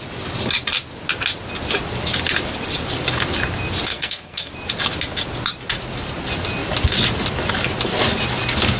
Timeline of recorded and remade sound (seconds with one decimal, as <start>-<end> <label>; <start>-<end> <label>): 0.0-3.9 recorded; 3.9-4.5 remade; 4.5-8.8 recorded